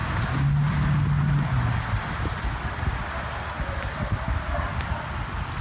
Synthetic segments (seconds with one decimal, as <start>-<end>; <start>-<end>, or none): none